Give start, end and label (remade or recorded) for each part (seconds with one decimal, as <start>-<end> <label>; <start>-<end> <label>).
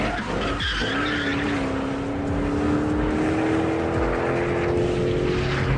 0.0-5.8 recorded